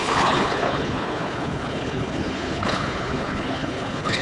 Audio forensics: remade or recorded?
remade